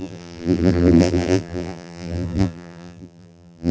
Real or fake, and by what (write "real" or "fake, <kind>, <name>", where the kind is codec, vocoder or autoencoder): fake, vocoder, BigVGAN v2